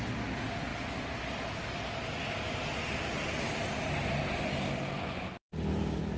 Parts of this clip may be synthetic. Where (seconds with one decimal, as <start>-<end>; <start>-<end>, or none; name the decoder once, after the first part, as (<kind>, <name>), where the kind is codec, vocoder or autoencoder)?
none